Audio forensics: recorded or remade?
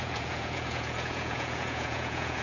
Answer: remade